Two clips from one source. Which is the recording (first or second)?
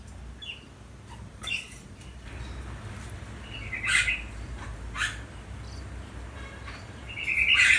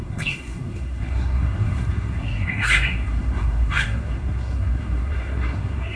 first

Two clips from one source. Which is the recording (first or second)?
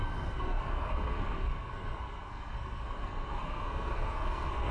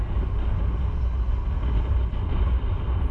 second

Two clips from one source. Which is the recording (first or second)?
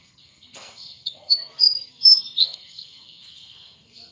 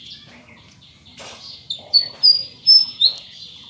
second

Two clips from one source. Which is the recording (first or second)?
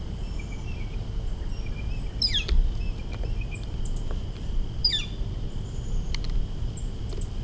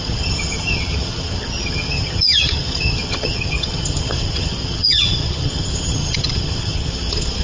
first